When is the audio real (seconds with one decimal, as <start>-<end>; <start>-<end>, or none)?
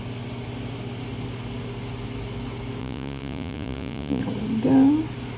0.0-2.8; 4.2-5.4